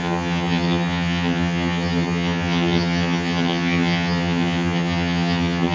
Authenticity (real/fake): fake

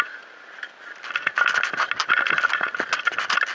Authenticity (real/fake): real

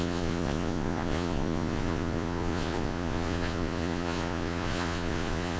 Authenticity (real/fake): fake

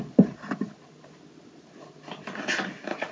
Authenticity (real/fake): real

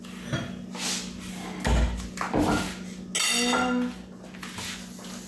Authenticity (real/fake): real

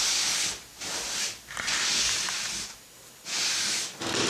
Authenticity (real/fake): real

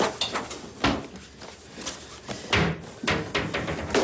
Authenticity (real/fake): real